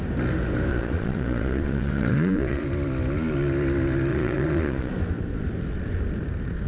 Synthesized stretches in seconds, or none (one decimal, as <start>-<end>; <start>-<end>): 0.7-2.6; 4.1-4.9